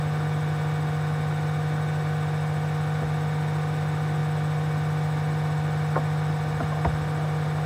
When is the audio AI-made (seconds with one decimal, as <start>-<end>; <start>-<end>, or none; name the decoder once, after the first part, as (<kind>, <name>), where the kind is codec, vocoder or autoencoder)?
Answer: none